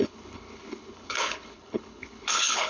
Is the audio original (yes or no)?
no